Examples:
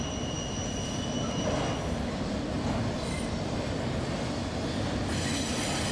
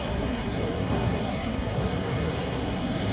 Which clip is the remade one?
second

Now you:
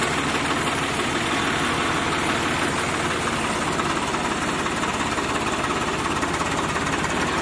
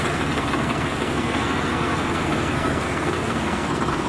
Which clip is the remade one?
second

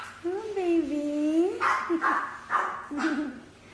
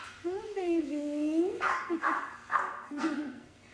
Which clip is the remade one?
second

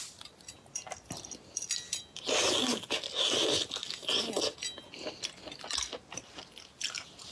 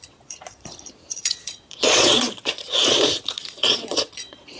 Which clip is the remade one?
second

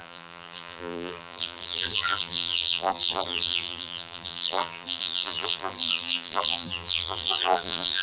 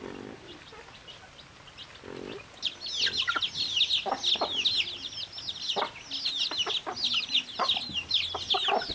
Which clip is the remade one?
first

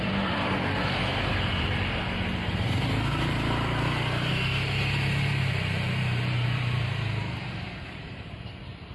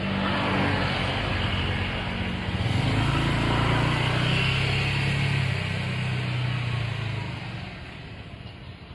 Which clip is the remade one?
first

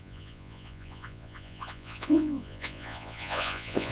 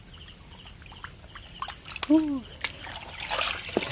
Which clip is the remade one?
first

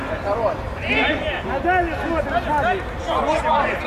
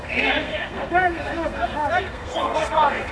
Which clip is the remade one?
second